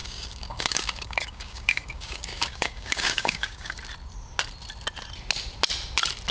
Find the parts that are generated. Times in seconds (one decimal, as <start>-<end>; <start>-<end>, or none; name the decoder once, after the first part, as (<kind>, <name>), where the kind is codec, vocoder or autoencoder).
0.0-3.8 (codec, DAC)